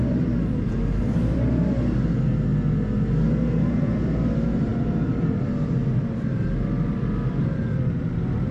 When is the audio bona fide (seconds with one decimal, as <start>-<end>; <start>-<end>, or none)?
2.5-3.7